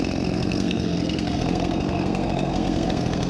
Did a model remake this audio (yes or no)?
yes